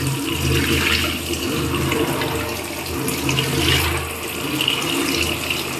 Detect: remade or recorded recorded